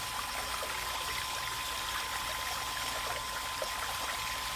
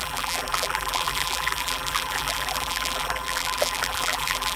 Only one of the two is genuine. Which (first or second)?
first